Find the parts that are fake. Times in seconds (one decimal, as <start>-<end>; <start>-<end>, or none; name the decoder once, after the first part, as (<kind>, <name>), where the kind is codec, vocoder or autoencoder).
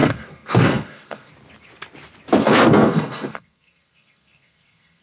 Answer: 0.0-1.3 (codec, SNAC); 2.4-5.0